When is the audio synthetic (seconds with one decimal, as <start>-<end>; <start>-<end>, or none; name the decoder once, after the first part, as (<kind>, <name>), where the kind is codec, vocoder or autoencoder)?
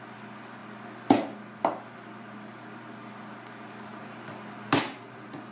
none